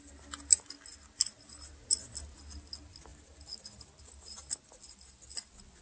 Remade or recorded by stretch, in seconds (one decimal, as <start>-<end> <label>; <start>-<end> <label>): 0.0-5.8 recorded